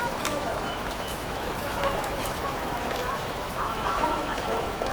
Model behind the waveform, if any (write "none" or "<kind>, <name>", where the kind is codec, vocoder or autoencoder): autoencoder, DAC-VAE